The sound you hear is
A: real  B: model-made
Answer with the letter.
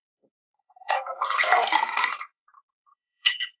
B